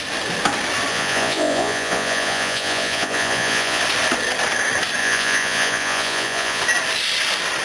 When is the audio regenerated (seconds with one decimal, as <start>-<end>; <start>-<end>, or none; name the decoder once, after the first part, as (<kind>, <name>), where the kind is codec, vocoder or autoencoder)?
0.9-3.8 (vocoder, Vocos); 5.0-6.6